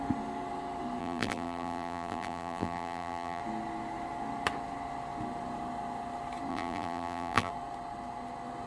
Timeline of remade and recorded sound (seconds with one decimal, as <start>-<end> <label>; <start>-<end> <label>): 0.0-1.0 recorded; 1.0-3.4 remade; 3.4-6.5 recorded; 6.5-7.5 remade; 7.5-8.7 recorded